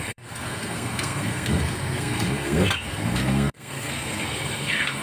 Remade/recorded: remade